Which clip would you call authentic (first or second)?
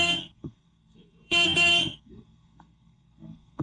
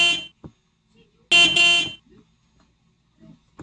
second